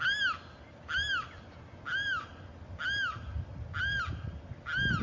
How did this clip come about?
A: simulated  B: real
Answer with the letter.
B